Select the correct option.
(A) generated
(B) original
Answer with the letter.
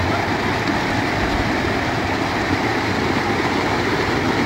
B